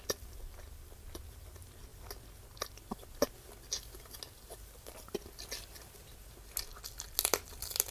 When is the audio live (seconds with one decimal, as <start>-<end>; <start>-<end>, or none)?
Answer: 0.0-7.9